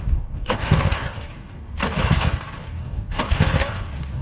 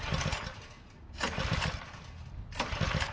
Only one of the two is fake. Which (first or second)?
first